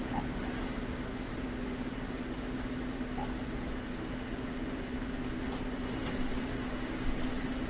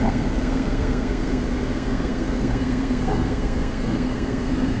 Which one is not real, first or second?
second